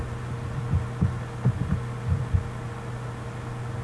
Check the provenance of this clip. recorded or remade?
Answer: recorded